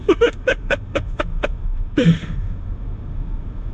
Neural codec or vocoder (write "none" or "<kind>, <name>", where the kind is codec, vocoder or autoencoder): autoencoder, DAC-VAE